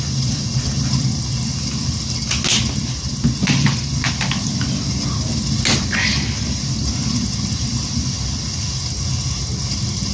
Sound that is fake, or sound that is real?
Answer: real